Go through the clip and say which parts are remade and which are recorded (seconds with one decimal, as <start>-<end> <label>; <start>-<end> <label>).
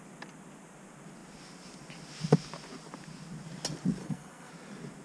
0.0-4.0 recorded; 4.0-4.5 remade; 4.5-5.0 recorded